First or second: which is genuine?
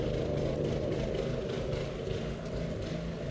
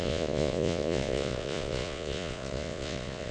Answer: first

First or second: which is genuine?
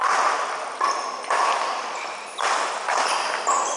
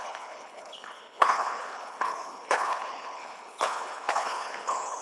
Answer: first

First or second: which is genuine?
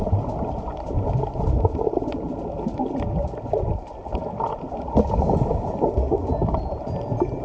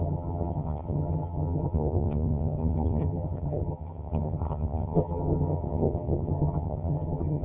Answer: first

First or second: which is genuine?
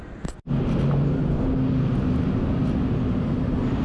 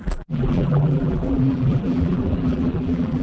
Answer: first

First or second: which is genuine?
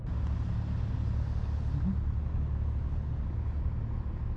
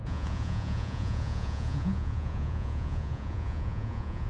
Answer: first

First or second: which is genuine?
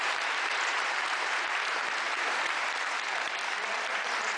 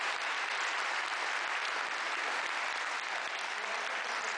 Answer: second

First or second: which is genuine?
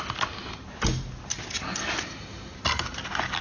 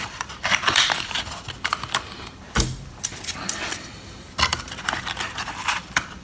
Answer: first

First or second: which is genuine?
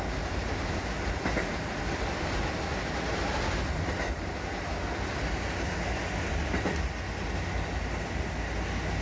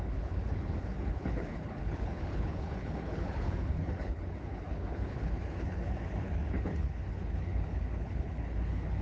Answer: first